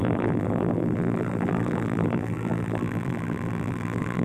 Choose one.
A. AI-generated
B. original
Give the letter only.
A